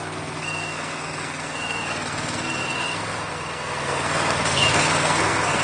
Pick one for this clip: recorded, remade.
remade